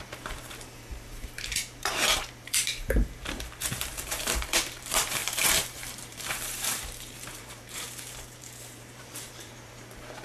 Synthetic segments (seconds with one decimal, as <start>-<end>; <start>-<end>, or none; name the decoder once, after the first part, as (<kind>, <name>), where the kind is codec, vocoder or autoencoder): 0.0-10.2 (vocoder, BigVGAN v2)